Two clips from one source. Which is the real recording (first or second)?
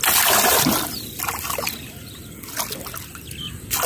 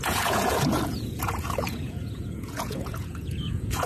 first